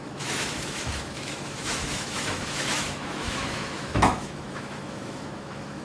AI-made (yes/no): yes